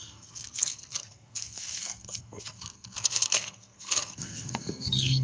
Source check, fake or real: fake